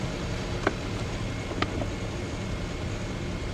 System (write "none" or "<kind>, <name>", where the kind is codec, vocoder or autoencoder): none